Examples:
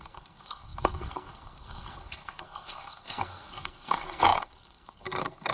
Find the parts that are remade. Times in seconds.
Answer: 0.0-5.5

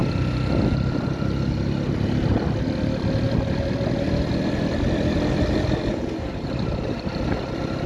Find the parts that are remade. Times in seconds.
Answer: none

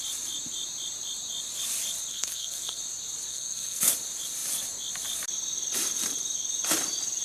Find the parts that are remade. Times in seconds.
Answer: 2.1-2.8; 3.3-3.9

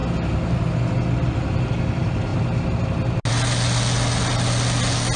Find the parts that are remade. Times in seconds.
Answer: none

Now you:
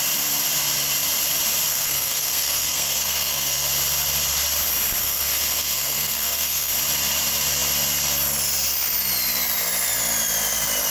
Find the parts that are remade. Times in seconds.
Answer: 1.7-3.7; 5.0-6.7